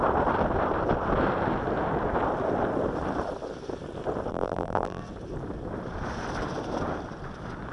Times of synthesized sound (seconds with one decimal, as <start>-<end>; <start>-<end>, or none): 4.3-5.0